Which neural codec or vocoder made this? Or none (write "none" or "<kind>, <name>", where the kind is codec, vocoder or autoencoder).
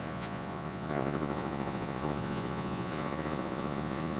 vocoder, Vocos